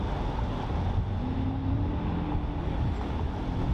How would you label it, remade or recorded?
recorded